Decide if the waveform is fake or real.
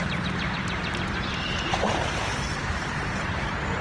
fake